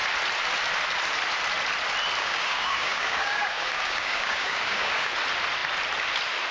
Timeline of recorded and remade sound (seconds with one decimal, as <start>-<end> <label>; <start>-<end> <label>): 0.0-2.2 recorded; 2.2-5.1 remade; 5.1-6.5 recorded